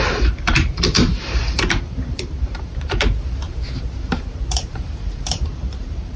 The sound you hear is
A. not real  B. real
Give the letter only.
A